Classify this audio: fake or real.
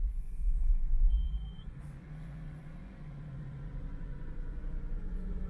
fake